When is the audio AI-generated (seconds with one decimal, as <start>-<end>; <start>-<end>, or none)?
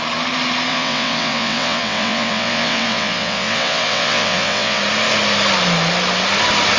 0.7-4.8